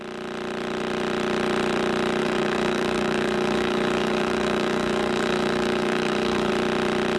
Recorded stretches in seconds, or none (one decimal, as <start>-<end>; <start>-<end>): 0.0-2.2; 6.5-7.2